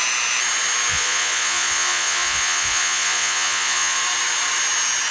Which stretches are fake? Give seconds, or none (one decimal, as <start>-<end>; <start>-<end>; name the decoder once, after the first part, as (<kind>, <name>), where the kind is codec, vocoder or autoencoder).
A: 0.9-4.0 (vocoder, Vocos)